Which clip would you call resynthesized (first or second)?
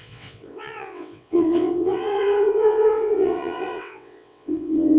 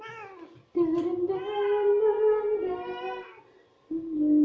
first